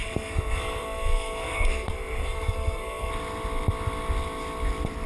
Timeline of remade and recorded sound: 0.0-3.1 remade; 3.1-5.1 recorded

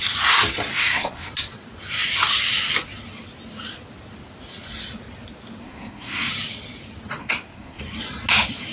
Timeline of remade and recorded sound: 0.0-0.7 recorded; 0.7-1.3 remade; 1.3-5.6 recorded; 5.6-6.3 remade; 6.3-7.2 recorded; 7.2-7.8 remade; 7.8-8.7 recorded

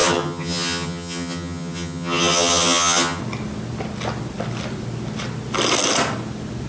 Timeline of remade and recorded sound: 0.0-3.2 remade; 3.2-6.7 recorded

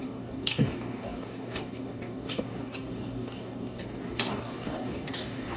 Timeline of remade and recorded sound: 0.0-5.6 remade